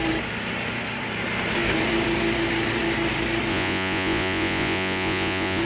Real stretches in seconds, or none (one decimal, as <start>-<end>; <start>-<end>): 0.0-3.5